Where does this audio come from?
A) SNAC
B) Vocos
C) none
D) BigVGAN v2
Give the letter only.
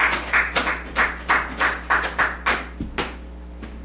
C